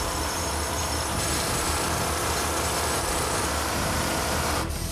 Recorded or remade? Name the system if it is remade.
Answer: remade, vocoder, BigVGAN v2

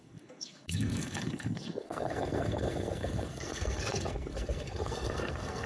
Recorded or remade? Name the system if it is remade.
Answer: remade, codec, SNAC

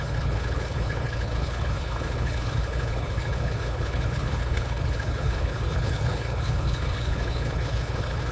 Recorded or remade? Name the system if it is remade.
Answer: remade, codec, HILCodec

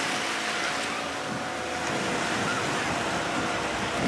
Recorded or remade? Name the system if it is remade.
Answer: recorded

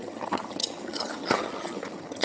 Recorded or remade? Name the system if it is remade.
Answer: remade, vocoder, HiFi-GAN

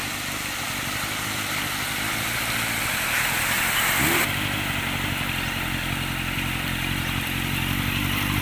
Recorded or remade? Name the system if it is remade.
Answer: remade, vocoder, BigVGAN v2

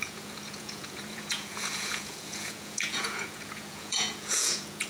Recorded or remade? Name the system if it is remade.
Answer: remade, vocoder, Vocos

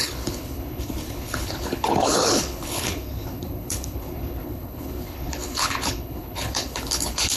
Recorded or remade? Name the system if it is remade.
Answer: remade, codec, HILCodec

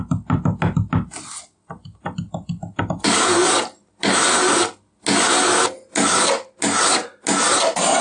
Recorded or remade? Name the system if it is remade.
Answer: recorded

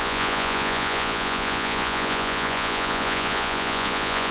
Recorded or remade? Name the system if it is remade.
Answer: remade, vocoder, Vocos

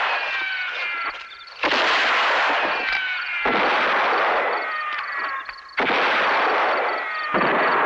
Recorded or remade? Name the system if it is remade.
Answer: recorded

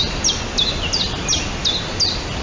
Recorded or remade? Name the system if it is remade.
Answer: recorded